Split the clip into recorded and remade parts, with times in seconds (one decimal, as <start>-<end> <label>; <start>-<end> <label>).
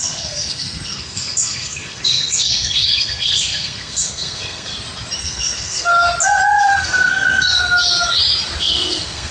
0.0-4.7 remade; 4.7-5.2 recorded; 5.2-5.9 remade; 5.9-6.6 recorded; 6.6-7.6 remade; 7.6-8.6 recorded; 8.6-9.3 remade